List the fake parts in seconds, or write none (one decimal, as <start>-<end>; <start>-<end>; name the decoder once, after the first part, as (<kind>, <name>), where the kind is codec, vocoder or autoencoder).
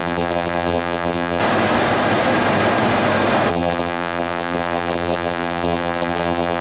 0.0-1.4 (vocoder, BigVGAN v2); 3.5-6.6